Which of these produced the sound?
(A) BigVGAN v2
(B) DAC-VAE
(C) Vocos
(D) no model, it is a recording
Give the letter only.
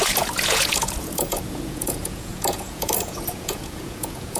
C